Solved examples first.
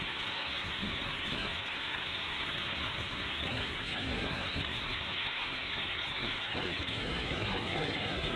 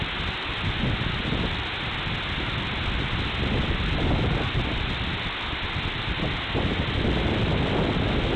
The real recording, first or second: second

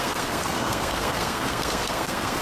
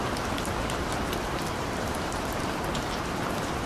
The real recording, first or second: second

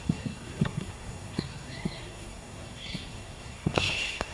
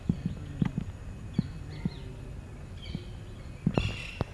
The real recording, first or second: second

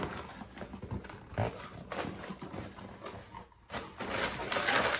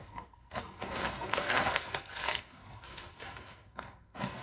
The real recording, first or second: first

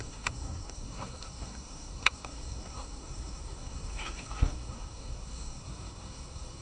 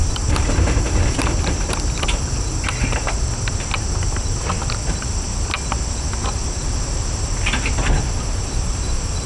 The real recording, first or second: second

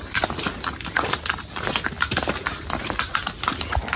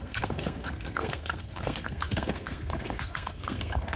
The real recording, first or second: first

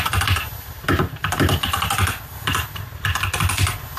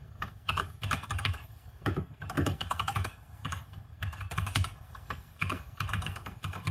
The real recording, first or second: first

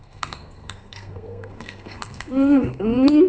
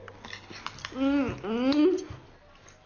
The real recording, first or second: second